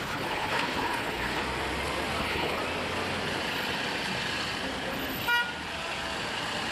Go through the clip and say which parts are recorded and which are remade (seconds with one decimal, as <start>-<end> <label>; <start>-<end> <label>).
0.0-1.4 remade; 1.4-2.2 recorded; 2.2-2.6 remade; 2.6-6.7 recorded